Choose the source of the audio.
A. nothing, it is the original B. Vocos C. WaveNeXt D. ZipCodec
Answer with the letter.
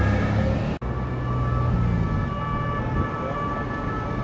A